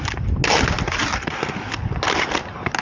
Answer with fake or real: real